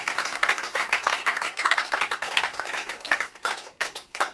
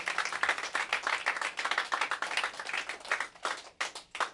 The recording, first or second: second